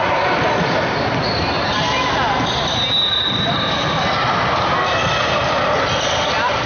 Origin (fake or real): real